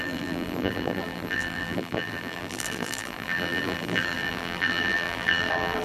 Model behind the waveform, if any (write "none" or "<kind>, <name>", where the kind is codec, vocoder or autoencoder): vocoder, BigVGAN v2